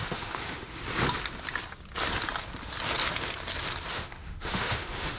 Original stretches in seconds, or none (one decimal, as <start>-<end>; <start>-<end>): 0.8-3.9